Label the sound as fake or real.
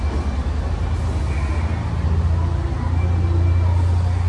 real